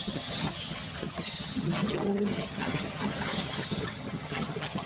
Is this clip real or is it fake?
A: fake